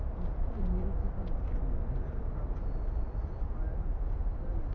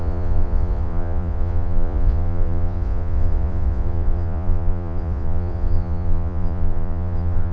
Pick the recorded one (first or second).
first